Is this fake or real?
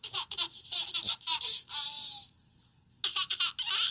real